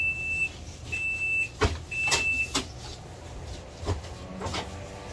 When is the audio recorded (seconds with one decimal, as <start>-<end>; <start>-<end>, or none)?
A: 0.0-5.1